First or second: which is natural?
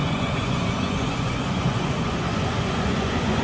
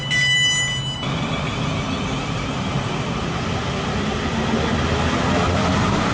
second